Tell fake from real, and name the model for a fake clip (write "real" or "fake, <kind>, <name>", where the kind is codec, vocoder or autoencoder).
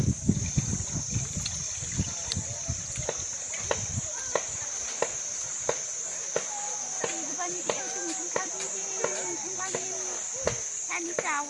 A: real